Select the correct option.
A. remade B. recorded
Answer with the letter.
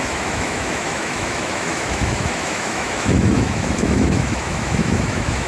A